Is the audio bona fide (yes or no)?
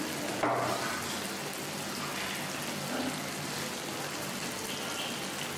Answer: yes